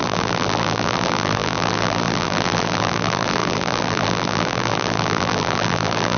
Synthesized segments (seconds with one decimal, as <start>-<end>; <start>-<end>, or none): 0.0-6.2